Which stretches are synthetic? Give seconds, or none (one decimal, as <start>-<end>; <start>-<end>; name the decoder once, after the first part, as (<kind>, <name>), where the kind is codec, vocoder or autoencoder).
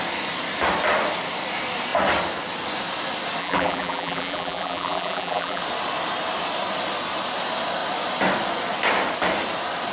3.4-5.6 (vocoder, BigVGAN v2)